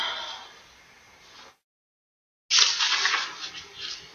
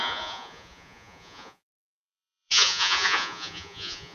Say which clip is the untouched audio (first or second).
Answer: first